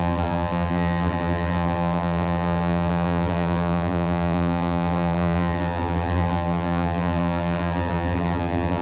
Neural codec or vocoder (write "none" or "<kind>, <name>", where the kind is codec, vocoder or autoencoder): vocoder, BigVGAN v2